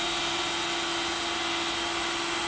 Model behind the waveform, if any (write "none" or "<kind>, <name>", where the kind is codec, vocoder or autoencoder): none